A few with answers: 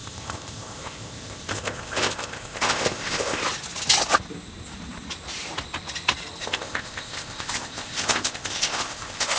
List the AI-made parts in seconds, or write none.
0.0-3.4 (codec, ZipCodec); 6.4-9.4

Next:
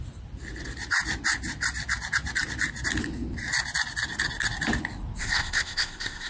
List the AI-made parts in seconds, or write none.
5.2-6.3 (codec, ZipCodec)

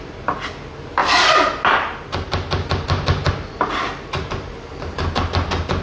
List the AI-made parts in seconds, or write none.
none

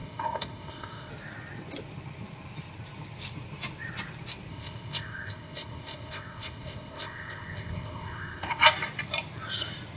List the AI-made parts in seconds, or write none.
0.0-1.1 (codec, ZipCodec); 4.5-8.6

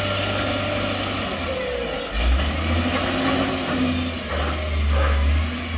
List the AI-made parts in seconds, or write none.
none

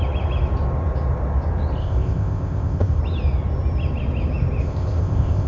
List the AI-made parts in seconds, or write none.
1.8-3.0 (codec, ZipCodec); 4.6-5.5